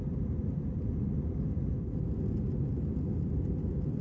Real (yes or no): yes